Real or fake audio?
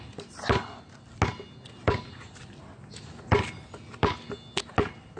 real